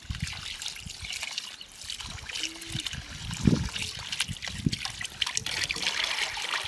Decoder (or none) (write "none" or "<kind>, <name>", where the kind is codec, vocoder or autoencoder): none